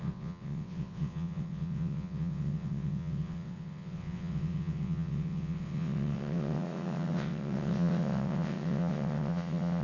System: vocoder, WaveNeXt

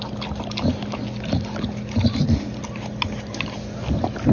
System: none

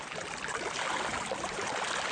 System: none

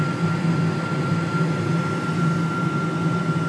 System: none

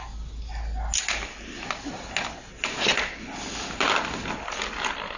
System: none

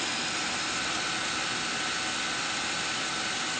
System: none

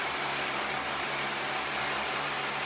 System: none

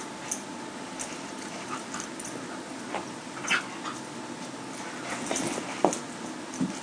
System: none